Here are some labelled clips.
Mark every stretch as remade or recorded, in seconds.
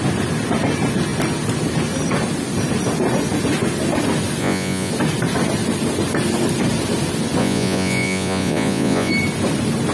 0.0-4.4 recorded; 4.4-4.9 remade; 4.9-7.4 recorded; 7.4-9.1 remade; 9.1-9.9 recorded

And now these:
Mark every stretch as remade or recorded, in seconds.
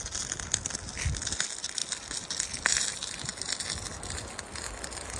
0.0-5.2 recorded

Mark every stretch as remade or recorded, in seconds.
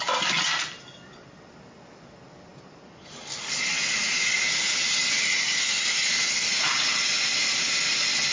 0.0-8.3 recorded